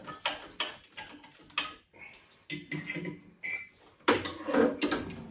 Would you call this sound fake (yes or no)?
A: no